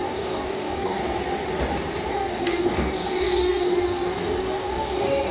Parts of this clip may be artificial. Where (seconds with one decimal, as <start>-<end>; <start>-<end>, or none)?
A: 0.0-1.0; 2.1-5.3